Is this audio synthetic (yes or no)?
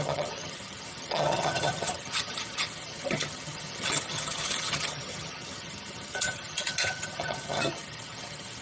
yes